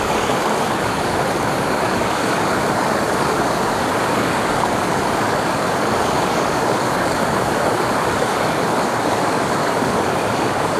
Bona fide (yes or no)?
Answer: no